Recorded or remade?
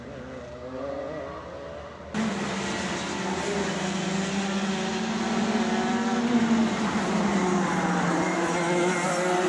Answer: recorded